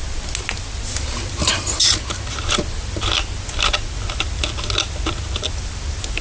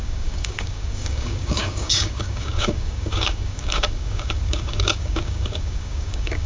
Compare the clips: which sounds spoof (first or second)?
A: second